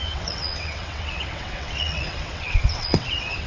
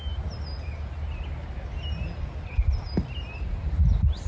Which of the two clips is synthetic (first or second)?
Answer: first